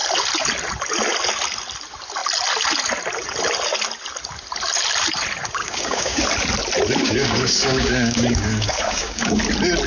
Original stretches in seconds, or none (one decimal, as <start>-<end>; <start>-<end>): 0.0-5.6; 6.2-7.0; 9.4-9.9